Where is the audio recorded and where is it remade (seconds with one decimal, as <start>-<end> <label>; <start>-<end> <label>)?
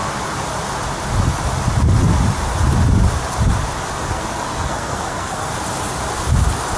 0.0-4.1 recorded; 4.1-5.5 remade; 5.5-6.8 recorded